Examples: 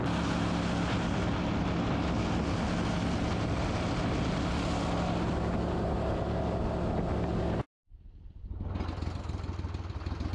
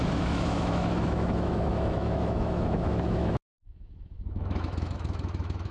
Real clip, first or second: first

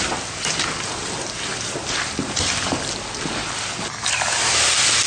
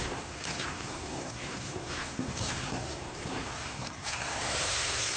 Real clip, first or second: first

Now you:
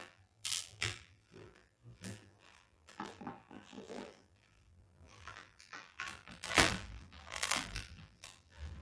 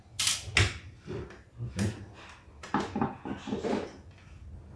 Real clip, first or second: second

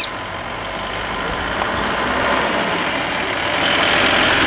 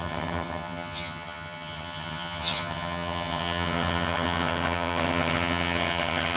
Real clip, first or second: first